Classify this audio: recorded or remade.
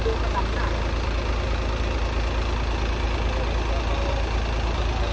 recorded